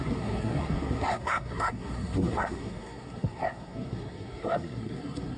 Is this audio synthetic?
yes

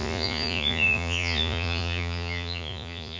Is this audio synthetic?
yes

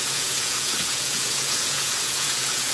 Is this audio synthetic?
yes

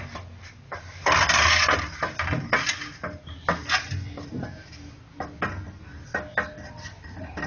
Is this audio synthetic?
no